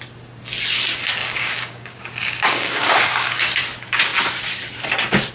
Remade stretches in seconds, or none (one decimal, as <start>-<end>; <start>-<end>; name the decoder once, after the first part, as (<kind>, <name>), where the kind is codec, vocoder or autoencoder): 1.2-3.6 (codec, DAC)

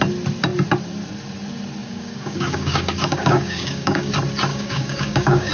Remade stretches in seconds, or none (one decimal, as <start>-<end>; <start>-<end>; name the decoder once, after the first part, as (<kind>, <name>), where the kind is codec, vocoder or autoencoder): 1.8-4.1 (codec, DAC); 4.5-5.5